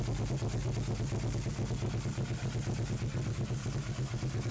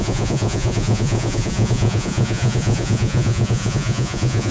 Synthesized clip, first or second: second